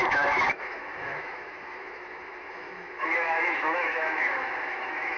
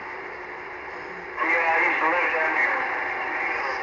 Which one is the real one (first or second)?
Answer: second